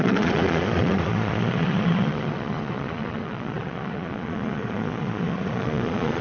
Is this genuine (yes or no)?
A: no